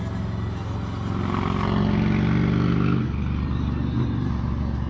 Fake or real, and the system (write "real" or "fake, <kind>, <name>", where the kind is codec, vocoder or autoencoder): real